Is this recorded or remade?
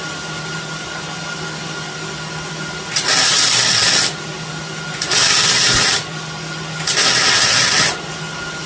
recorded